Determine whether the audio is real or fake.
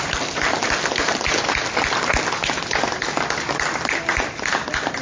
real